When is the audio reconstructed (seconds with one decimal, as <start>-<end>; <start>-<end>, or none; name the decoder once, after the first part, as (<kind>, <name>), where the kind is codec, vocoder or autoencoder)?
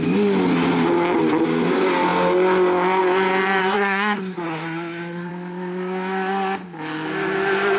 3.6-5.3 (codec, SNAC)